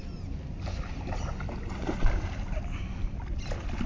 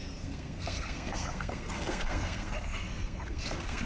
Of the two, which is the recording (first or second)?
first